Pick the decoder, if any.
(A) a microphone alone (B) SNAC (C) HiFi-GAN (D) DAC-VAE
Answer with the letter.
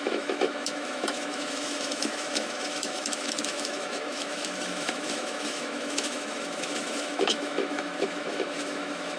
D